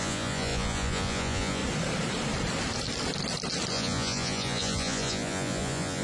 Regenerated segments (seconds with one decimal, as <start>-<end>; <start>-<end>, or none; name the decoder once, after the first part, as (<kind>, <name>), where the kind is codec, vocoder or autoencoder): 0.0-1.6 (vocoder, Vocos); 3.7-6.0